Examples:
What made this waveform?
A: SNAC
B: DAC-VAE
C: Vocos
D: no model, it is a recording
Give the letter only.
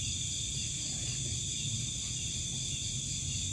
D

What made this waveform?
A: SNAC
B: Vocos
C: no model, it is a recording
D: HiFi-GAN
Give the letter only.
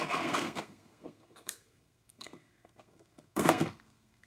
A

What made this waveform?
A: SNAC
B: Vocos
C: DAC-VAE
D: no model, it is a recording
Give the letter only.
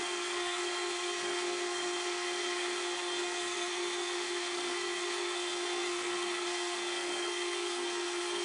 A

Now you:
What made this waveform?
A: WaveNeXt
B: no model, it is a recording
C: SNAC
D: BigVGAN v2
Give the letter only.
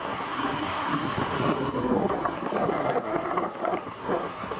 C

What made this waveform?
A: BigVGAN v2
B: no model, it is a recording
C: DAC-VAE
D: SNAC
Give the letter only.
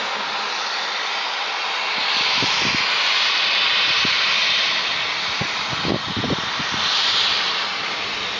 B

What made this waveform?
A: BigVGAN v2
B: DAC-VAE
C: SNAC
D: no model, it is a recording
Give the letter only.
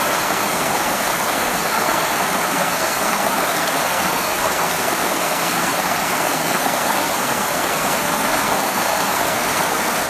C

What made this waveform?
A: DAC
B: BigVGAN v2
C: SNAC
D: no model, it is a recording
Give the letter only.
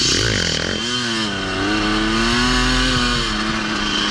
D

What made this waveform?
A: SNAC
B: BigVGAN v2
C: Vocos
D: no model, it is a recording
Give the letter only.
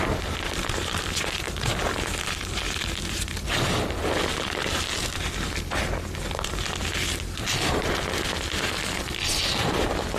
D